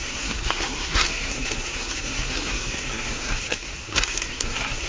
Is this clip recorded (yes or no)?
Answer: no